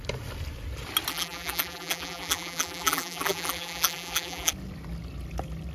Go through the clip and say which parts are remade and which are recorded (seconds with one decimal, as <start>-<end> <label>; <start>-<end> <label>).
0.0-1.1 recorded; 1.1-4.5 remade; 4.5-5.7 recorded